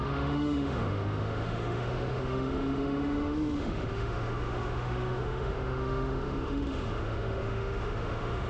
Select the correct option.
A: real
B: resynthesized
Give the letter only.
B